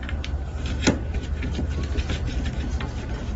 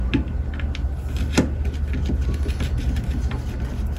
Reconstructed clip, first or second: first